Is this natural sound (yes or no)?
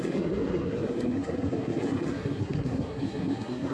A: no